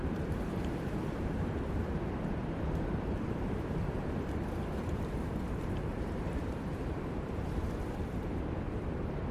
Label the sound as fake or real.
fake